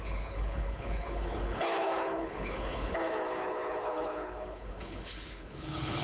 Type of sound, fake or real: fake